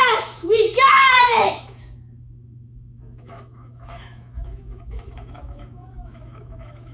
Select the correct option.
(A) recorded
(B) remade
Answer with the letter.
B